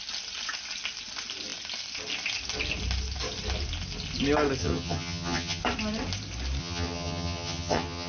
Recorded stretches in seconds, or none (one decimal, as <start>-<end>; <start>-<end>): 0.0-4.6; 5.6-6.6